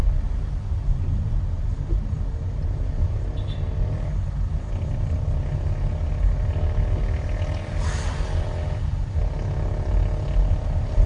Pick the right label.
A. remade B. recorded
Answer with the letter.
B